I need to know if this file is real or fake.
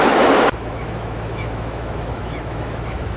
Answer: fake